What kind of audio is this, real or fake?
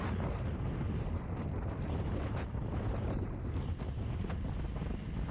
real